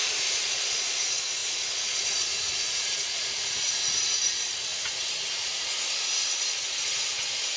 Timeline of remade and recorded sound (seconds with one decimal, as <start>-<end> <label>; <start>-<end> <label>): 0.0-7.6 remade